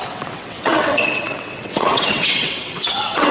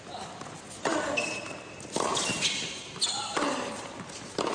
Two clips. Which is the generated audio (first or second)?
first